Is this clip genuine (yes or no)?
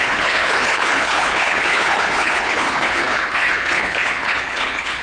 no